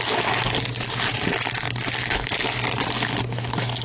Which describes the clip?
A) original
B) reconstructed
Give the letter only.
A